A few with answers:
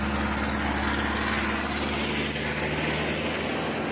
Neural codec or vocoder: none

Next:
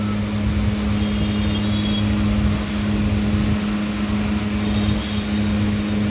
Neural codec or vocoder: none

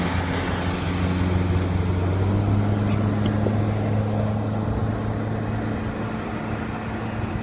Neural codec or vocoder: none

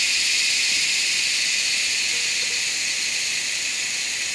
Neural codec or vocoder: none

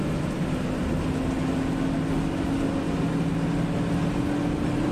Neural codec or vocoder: none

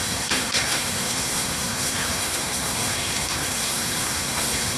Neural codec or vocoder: codec, SNAC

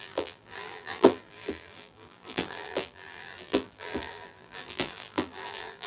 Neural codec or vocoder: vocoder, BigVGAN v2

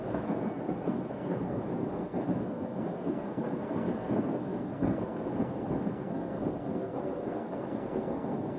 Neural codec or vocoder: codec, SNAC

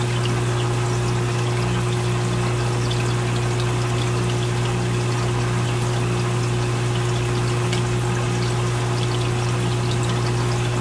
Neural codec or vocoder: none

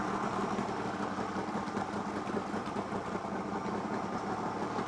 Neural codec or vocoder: none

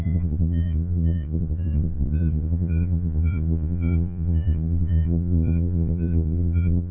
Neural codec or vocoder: vocoder, Vocos